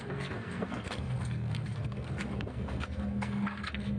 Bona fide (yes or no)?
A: no